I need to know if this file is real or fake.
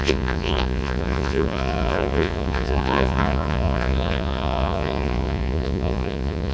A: fake